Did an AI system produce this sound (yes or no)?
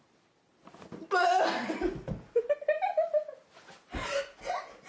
no